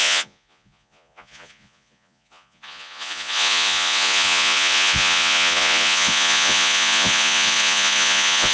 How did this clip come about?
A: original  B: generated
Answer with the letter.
B